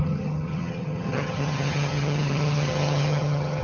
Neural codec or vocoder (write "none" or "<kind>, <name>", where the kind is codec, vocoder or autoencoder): vocoder, HiFi-GAN